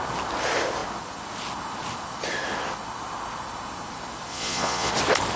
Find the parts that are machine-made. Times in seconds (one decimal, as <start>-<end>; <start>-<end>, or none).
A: 4.3-4.9